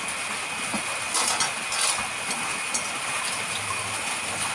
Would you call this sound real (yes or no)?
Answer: yes